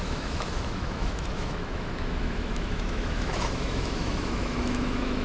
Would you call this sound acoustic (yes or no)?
no